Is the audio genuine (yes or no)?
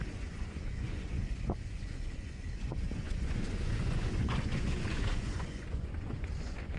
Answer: no